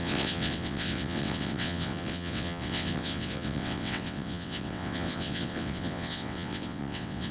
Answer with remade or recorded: remade